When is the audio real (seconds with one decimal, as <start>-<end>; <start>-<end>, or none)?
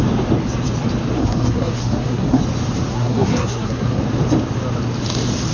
0.0-1.2; 2.4-2.9; 4.0-5.5